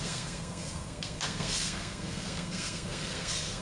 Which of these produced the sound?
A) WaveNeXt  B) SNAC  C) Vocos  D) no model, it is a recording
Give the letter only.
B